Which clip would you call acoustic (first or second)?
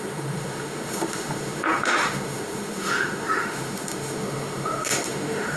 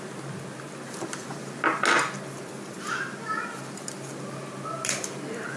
second